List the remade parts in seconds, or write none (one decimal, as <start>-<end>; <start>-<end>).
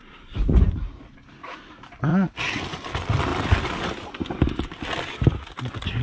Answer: none